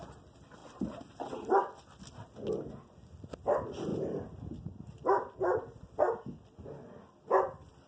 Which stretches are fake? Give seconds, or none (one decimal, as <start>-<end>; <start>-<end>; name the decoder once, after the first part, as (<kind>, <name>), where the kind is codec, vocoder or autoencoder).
none